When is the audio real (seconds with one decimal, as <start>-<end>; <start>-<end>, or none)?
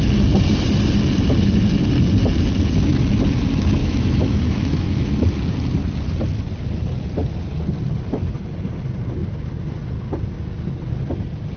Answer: 0.0-3.8; 5.1-11.6